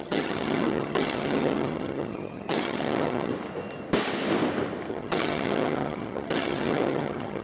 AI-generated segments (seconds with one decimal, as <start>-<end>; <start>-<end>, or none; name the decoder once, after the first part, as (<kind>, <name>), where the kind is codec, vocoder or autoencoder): 0.0-3.3 (vocoder, HiFi-GAN); 4.9-7.4